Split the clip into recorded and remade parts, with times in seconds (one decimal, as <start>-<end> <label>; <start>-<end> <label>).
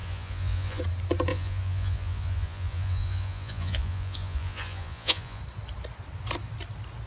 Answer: 0.0-0.8 remade; 0.8-1.3 recorded; 1.3-5.4 remade; 5.4-7.1 recorded